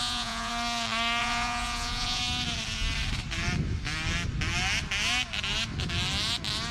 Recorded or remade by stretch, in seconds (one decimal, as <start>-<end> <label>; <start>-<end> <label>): 0.0-0.5 remade; 0.5-1.2 recorded; 1.2-2.2 remade; 2.2-6.7 recorded